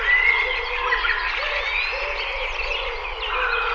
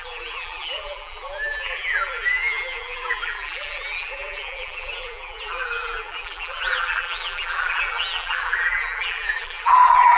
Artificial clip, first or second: second